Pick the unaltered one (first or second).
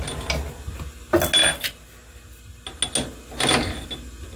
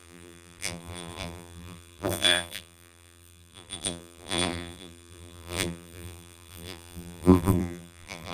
first